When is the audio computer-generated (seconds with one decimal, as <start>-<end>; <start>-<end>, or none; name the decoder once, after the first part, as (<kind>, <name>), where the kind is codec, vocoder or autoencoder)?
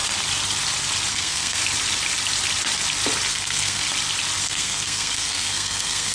1.1-1.6 (codec, SNAC); 3.3-3.8; 4.4-6.1